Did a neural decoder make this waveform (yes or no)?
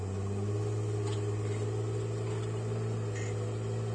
no